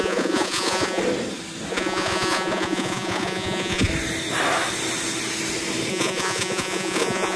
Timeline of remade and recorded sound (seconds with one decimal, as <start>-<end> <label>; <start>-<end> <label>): 0.0-1.0 remade; 1.0-1.7 recorded; 1.7-3.9 remade; 3.9-5.9 recorded; 5.9-7.4 remade